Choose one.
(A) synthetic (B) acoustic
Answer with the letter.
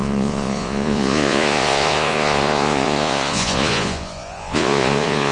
A